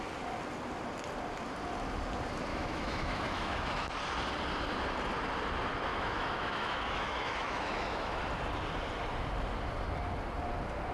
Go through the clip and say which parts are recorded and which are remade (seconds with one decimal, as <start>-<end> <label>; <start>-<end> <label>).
0.0-2.5 recorded; 2.5-3.9 remade; 3.9-5.9 recorded; 5.9-8.2 remade; 8.2-10.9 recorded